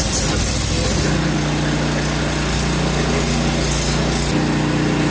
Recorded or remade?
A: recorded